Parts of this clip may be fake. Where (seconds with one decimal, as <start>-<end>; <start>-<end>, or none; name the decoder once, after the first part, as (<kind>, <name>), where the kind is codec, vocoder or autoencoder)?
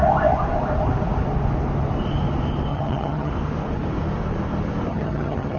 2.7-3.3 (vocoder, HiFi-GAN); 4.9-5.6